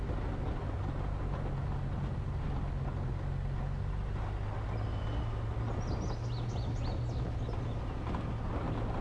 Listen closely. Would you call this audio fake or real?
real